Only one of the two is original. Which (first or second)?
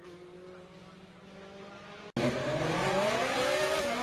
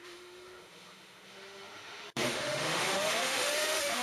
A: first